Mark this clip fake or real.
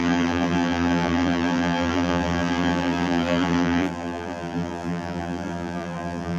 fake